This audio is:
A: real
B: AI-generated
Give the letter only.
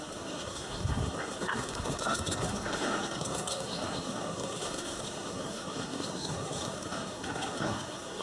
B